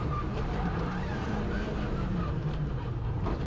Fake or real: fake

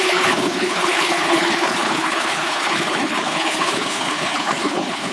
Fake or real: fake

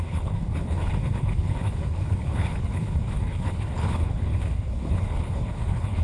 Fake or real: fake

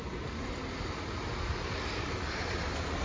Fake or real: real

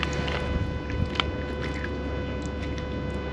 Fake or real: real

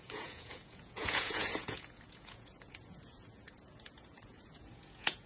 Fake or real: fake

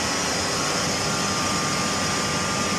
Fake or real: real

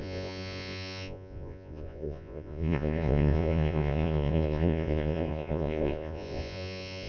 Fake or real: fake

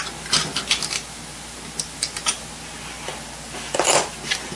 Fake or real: real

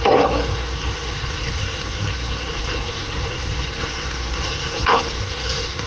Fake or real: fake